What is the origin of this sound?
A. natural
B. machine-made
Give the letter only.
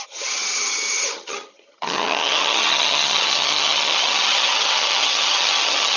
B